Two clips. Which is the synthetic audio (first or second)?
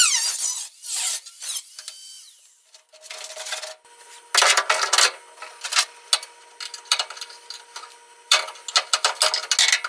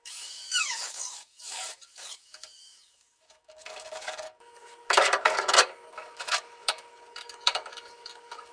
second